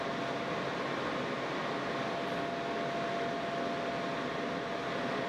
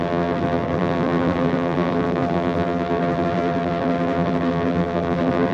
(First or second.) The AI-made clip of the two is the second